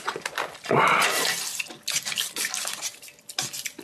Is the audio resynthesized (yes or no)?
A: no